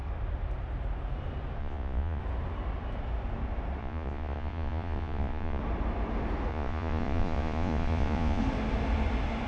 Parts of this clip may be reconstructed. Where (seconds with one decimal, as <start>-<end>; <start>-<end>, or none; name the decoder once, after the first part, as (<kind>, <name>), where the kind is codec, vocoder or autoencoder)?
1.6-2.2 (vocoder, Vocos); 3.8-5.6; 6.5-8.4